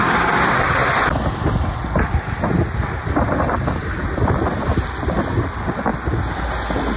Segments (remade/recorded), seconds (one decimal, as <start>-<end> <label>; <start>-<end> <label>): 0.0-7.0 recorded